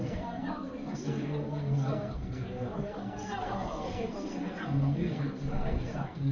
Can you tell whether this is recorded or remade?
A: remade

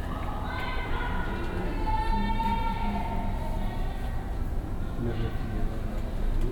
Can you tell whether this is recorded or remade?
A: recorded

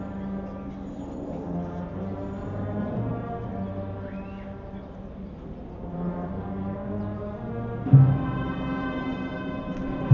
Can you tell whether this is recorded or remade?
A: recorded